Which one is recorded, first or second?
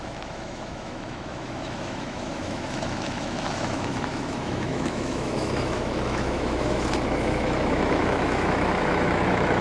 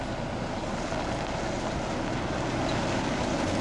second